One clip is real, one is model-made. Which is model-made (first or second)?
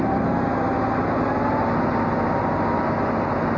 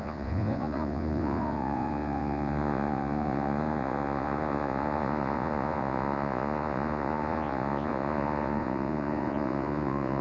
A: second